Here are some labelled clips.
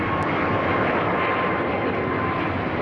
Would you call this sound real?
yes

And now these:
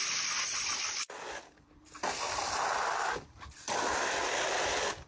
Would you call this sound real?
no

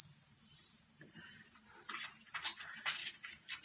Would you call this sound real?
no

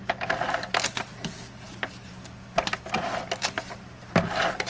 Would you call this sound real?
yes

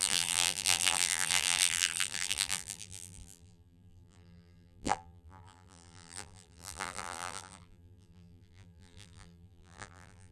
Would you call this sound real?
no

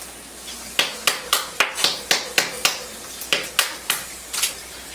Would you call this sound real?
yes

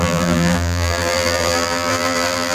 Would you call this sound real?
no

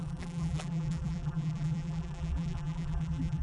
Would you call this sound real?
no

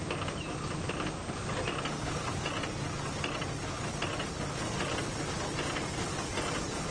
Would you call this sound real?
yes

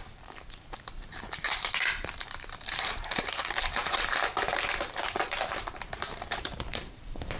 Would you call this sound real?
no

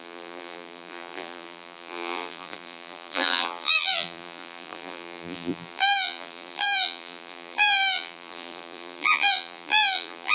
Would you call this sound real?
no